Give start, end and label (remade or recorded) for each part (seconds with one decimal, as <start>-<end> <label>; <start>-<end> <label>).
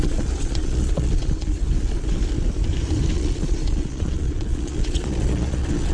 0.0-1.6 remade; 1.6-3.1 recorded; 3.1-5.9 remade